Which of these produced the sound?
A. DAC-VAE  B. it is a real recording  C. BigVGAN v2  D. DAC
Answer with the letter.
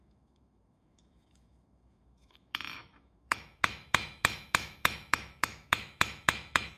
A